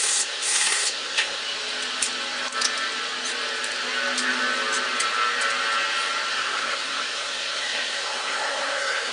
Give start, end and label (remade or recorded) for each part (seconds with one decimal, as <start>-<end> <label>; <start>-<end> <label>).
0.0-1.4 remade; 1.4-6.3 recorded; 6.3-9.1 remade